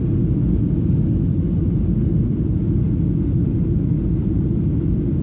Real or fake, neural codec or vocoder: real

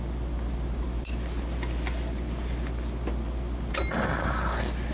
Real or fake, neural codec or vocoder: real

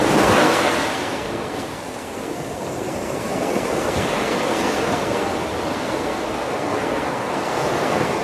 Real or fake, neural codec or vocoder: fake, codec, SNAC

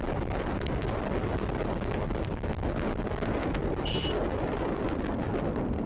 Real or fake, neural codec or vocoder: real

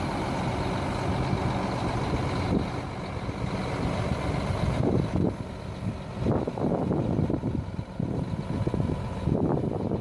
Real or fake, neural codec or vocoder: real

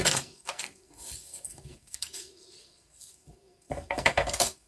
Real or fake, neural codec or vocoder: fake, codec, SNAC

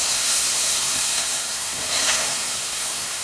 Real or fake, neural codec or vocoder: fake, codec, SNAC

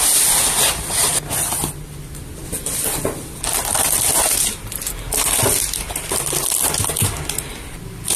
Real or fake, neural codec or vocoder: real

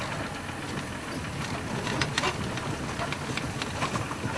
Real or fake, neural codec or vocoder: real